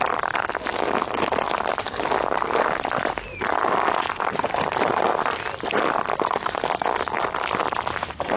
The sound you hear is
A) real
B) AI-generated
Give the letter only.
A